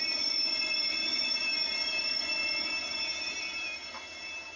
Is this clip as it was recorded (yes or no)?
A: yes